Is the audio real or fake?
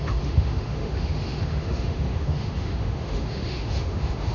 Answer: fake